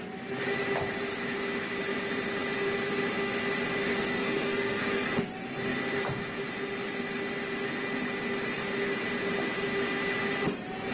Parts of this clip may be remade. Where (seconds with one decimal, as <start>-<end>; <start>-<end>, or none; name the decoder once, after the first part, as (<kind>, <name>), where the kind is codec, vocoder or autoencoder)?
3.9-5.1 (codec, SNAC)